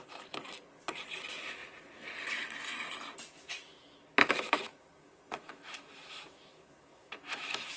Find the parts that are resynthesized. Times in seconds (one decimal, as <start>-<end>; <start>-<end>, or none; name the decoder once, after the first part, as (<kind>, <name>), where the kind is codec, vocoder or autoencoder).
3.7-7.8 (autoencoder, DAC-VAE)